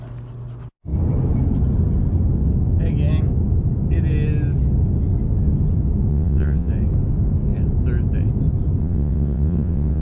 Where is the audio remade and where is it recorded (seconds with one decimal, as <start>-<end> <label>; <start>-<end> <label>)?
0.0-6.1 recorded; 6.1-6.7 remade; 6.7-8.8 recorded; 8.8-10.0 remade